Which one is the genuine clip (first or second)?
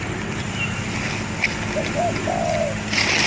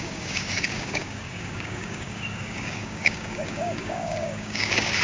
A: first